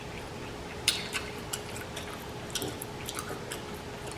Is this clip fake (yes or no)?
no